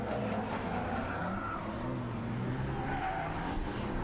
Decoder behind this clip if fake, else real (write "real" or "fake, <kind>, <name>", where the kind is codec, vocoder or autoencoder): real